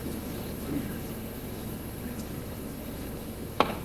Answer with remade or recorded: remade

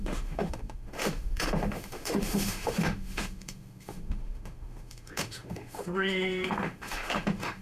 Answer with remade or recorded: remade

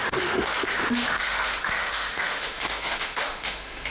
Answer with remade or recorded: remade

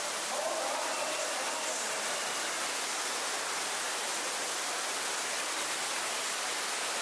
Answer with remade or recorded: recorded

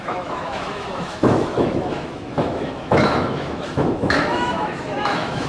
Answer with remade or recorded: remade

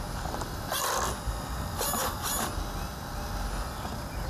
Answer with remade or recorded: recorded